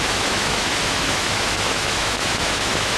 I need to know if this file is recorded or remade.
remade